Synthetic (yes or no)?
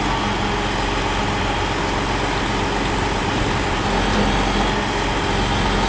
no